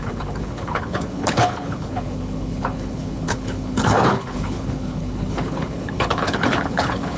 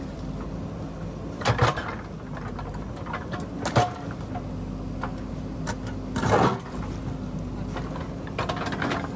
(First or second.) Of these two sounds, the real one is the second